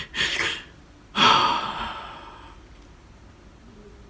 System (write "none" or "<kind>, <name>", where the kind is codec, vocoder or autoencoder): none